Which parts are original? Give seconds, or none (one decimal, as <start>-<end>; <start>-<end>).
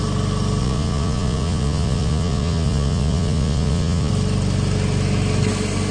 0.0-0.6; 4.1-5.9